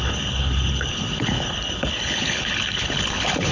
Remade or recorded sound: remade